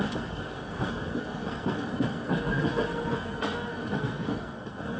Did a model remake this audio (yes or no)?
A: yes